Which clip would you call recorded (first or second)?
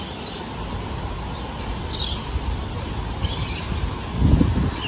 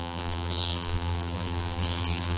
first